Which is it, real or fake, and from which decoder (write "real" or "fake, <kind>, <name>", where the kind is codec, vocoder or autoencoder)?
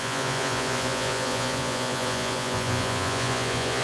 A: fake, vocoder, Vocos